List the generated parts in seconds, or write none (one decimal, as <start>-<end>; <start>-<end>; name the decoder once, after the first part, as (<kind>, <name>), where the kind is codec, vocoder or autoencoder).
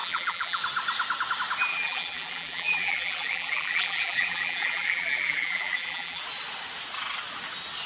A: 0.0-0.6 (vocoder, BigVGAN v2); 1.7-6.2